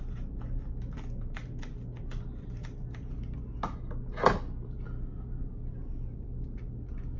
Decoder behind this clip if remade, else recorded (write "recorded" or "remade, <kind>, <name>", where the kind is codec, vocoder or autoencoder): recorded